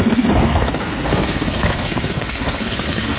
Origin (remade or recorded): remade